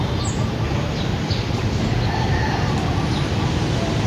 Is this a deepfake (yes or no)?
no